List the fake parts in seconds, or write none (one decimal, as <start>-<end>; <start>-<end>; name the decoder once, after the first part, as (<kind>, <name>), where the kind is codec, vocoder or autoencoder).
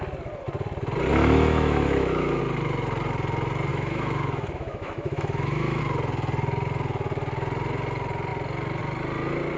1.1-2.4 (autoencoder, DAC-VAE); 3.7-5.8